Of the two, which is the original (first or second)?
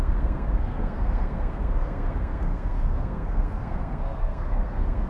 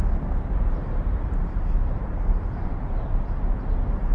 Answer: second